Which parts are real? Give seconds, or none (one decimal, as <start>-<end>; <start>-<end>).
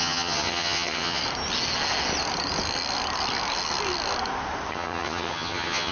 1.2-4.7